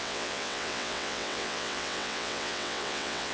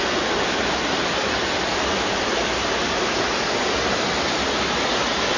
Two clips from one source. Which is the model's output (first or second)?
first